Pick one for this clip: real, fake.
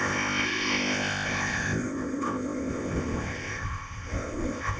fake